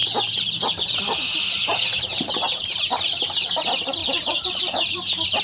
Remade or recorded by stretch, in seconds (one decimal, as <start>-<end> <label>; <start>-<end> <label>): 0.0-2.1 recorded; 2.1-3.6 remade; 3.6-4.0 recorded; 4.0-5.4 remade